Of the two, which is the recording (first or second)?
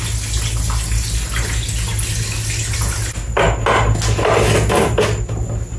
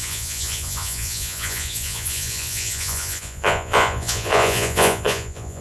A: first